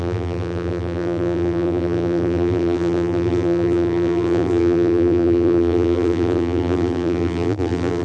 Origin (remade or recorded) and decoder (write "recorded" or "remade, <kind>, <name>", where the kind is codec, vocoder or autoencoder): remade, vocoder, BigVGAN v2